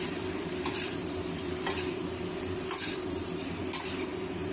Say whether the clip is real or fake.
fake